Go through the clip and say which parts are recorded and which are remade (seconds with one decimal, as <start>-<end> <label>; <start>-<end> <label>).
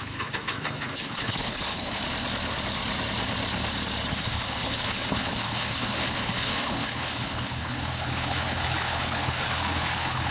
0.0-2.0 remade; 2.0-4.1 recorded; 4.1-10.3 remade